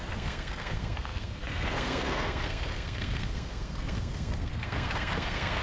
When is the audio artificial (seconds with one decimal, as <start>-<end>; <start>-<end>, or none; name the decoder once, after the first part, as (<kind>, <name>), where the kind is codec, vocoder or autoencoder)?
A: 0.0-5.6 (codec, SNAC)